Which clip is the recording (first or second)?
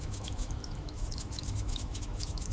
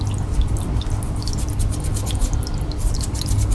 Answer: second